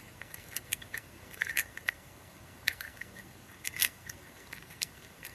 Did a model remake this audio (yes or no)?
yes